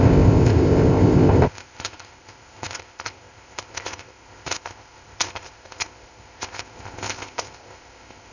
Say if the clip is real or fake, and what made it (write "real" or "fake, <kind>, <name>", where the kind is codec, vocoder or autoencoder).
fake, codec, ZipCodec